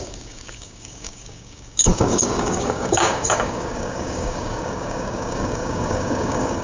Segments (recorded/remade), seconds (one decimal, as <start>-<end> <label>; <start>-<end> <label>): 0.0-6.6 remade